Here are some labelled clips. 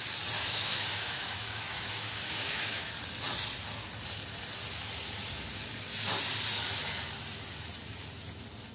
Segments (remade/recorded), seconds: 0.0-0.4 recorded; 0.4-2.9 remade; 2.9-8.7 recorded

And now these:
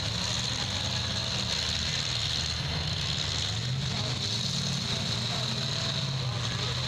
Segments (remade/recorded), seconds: 0.0-6.9 recorded